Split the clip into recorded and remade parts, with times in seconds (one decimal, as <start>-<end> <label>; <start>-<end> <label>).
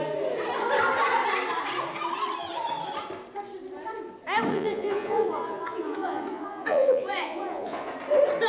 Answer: 0.0-4.5 recorded; 4.5-7.9 remade; 7.9-8.5 recorded